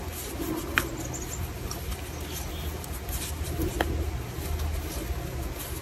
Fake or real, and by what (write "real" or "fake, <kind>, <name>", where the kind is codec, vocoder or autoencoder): real